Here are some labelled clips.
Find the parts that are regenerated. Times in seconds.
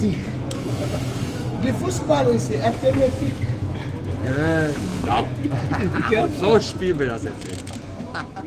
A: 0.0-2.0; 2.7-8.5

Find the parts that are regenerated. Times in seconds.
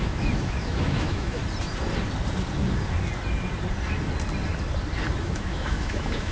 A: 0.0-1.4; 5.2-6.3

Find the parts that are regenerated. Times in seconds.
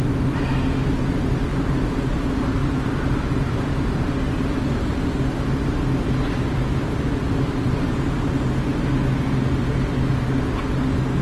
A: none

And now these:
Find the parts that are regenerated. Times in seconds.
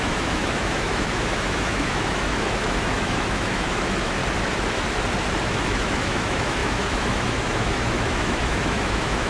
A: 0.0-4.2; 5.4-9.3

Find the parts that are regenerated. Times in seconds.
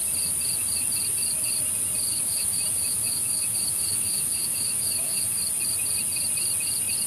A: 2.1-5.4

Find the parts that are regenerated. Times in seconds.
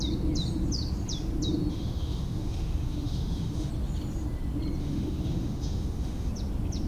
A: 1.7-3.7; 4.8-6.3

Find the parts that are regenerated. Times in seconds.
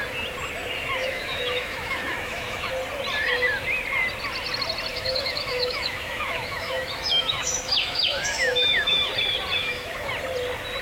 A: 1.0-2.7; 4.9-9.1; 9.6-10.1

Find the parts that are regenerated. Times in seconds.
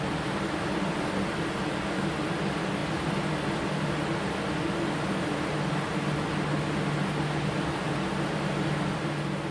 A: none